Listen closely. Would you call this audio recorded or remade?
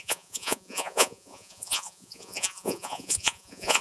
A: remade